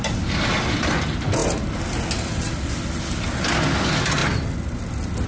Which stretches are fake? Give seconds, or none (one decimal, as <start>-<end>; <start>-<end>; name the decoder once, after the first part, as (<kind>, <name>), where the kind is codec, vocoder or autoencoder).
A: none